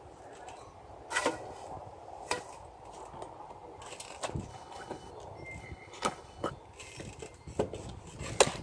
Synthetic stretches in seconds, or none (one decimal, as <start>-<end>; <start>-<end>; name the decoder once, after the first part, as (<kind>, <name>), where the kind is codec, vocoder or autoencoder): 4.5-5.1 (codec, HILCodec); 5.6-6.5